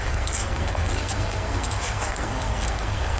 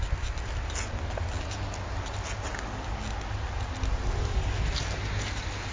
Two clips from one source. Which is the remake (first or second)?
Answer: first